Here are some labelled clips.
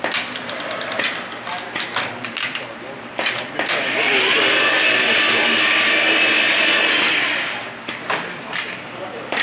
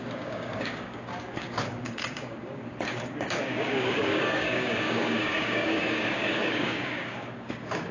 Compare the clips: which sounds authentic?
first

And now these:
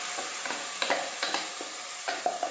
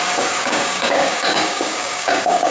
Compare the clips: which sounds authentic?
first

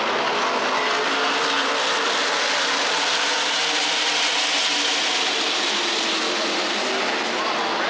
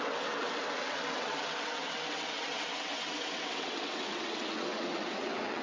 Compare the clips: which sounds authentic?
first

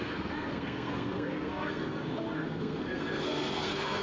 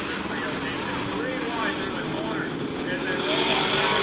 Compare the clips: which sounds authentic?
second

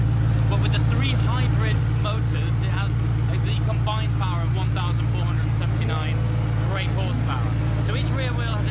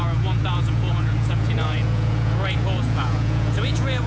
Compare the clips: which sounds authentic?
first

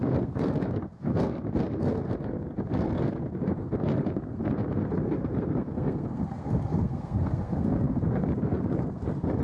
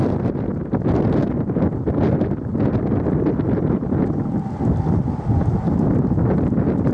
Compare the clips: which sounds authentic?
second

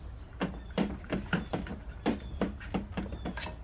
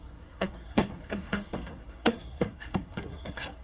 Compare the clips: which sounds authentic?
first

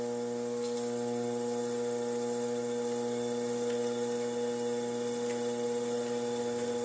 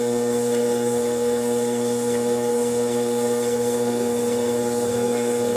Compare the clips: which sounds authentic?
first